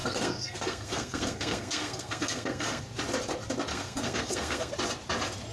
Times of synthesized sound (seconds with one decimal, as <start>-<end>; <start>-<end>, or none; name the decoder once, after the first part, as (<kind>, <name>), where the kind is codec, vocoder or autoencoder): 0.0-2.8 (codec, SNAC); 3.7-4.7